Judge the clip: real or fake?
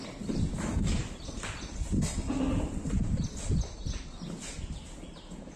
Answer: real